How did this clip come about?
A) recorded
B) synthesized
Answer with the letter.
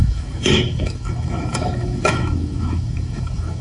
B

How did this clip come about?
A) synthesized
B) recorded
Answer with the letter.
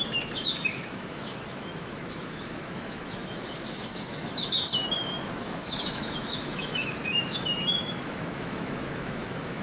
A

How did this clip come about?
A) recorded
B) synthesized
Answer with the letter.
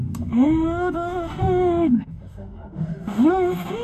B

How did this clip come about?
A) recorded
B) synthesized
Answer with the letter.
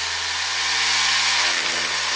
A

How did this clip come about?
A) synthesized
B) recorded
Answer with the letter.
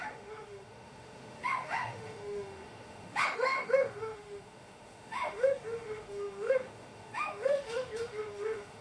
A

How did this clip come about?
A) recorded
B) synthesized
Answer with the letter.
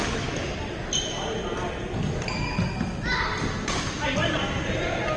A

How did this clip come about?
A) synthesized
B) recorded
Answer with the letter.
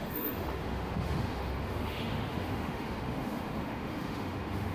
A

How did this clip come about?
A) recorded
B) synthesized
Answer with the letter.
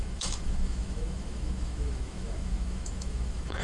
B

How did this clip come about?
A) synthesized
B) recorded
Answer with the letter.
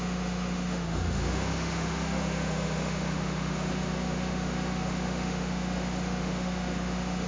A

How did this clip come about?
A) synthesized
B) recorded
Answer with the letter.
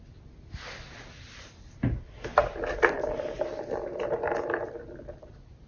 B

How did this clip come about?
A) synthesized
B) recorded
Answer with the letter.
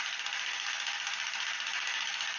B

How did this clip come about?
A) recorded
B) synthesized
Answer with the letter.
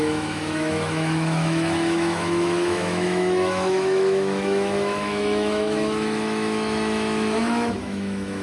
B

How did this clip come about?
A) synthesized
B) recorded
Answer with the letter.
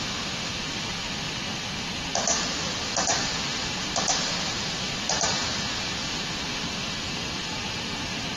B